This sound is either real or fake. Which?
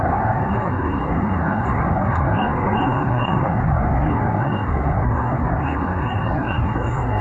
fake